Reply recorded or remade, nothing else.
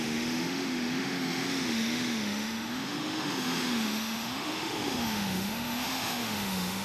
remade